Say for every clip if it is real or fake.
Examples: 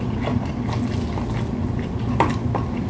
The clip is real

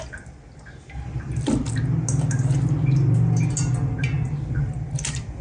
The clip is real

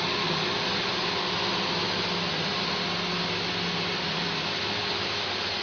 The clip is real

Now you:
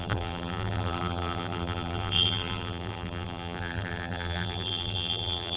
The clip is fake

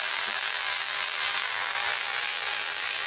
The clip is fake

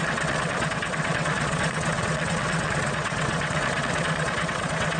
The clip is fake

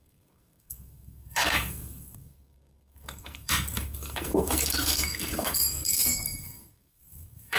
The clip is fake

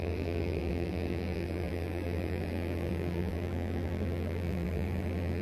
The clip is fake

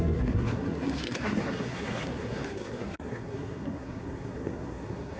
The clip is fake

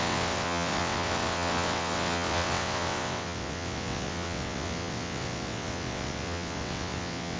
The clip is fake